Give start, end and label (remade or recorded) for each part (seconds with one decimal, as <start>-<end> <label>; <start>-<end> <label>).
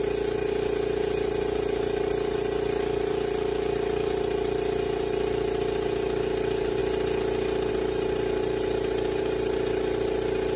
0.0-0.4 remade; 0.4-1.3 recorded; 1.3-6.8 remade; 6.8-7.7 recorded; 7.7-10.6 remade